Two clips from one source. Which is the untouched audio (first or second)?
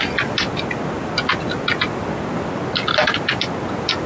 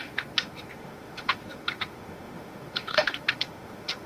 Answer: first